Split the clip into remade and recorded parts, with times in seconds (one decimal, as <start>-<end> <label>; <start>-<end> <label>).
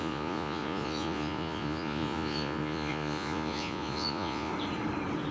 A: 0.0-4.5 remade; 4.5-5.3 recorded